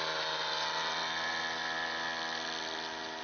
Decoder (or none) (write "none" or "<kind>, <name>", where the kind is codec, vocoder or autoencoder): none